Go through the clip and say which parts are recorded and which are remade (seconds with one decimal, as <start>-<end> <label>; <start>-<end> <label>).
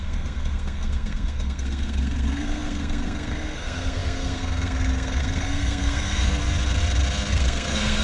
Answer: 0.0-6.4 remade; 6.4-7.3 recorded; 7.3-8.0 remade